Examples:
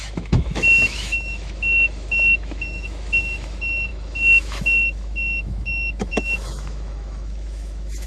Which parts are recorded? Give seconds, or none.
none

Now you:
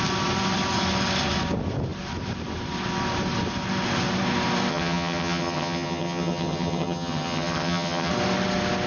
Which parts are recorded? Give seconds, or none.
0.0-4.7; 8.1-8.9

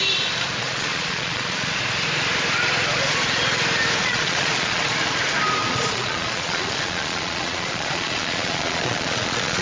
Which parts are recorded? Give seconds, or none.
0.0-0.6; 1.7-4.0; 4.8-5.6

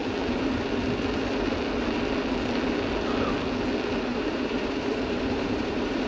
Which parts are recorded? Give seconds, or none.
0.0-4.1

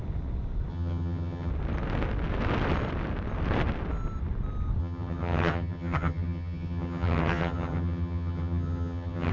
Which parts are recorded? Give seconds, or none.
0.0-0.7; 1.5-4.8